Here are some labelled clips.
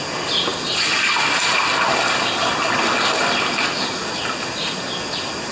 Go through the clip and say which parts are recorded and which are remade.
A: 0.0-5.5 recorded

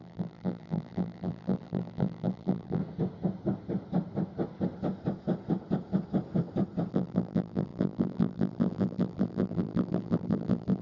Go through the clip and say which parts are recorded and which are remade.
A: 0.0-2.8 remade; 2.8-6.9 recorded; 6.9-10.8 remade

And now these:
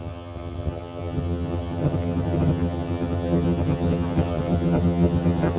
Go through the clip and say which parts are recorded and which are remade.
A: 0.0-5.6 remade

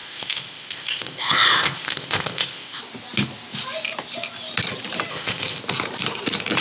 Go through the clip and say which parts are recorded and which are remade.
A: 0.0-2.8 remade; 2.8-5.1 recorded; 5.1-5.6 remade; 5.6-6.6 recorded